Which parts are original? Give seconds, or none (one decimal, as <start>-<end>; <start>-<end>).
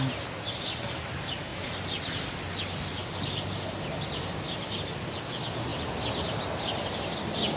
3.0-5.3